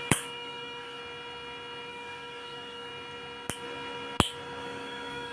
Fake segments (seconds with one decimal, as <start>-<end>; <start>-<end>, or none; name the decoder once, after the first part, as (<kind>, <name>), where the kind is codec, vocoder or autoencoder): 0.0-1.0 (codec, DAC); 1.9-2.9; 4.6-5.3